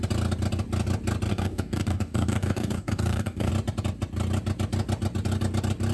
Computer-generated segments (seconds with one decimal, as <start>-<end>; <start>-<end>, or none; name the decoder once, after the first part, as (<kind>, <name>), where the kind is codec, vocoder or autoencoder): 1.3-3.5 (codec, DAC)